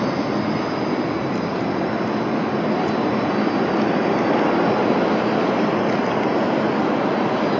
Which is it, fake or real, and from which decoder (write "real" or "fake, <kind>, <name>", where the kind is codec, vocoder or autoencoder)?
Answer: real